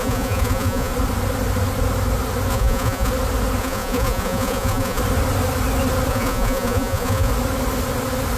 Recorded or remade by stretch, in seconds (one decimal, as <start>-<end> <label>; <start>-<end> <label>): 0.0-0.9 remade; 0.9-2.5 recorded; 2.5-3.1 remade; 3.1-3.6 recorded; 3.6-5.0 remade; 5.0-6.1 recorded; 6.1-7.3 remade; 7.3-8.4 recorded